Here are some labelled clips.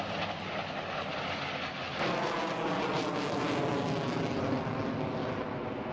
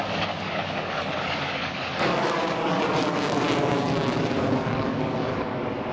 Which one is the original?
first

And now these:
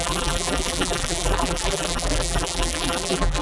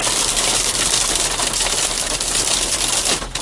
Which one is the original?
second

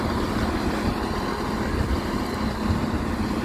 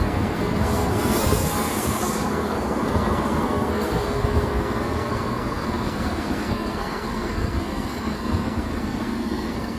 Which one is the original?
first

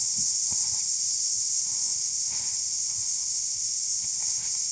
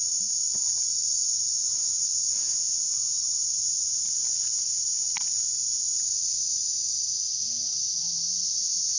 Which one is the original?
second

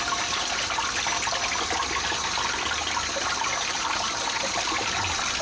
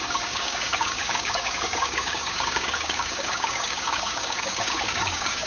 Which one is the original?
first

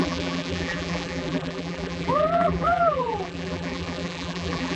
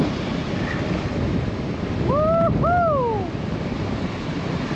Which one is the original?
second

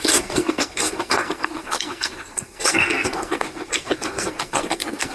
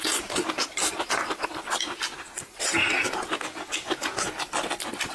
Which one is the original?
second